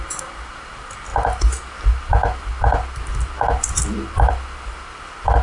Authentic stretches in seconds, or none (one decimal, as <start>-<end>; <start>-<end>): 0.0-5.4